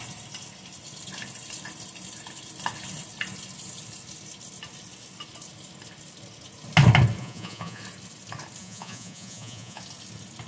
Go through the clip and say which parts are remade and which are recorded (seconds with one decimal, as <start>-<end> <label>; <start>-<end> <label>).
0.0-7.2 recorded; 7.2-7.8 remade; 7.8-8.6 recorded; 8.6-9.8 remade; 9.8-10.5 recorded